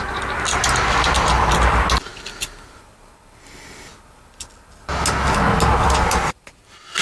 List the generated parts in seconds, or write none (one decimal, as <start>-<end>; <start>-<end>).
2.1-2.8